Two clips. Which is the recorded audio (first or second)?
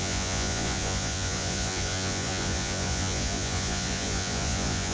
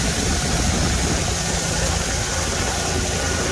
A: second